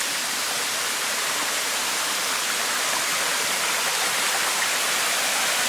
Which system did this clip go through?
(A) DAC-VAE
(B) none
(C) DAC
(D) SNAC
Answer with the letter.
B